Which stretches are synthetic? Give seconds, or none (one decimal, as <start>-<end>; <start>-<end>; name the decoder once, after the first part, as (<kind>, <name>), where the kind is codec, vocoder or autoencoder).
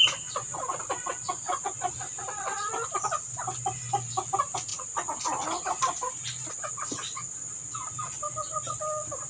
none